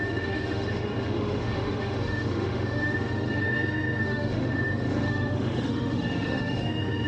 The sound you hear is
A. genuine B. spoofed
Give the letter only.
B